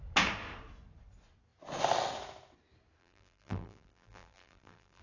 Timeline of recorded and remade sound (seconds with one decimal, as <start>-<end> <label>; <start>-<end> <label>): 0.0-3.0 recorded; 3.0-5.0 remade